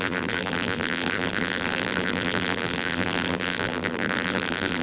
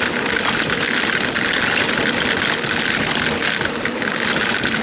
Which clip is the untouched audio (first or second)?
second